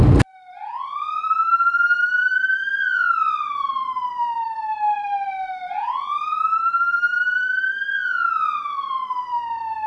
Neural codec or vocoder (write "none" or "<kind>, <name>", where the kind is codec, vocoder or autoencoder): none